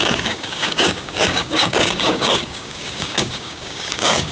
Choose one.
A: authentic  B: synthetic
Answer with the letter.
B